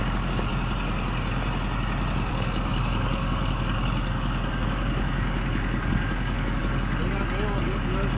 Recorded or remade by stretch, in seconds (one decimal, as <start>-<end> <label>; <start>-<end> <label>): 0.0-0.5 remade; 0.5-2.3 recorded; 2.3-7.0 remade; 7.0-7.6 recorded; 7.6-8.2 remade